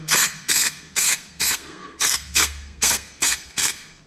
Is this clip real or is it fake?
fake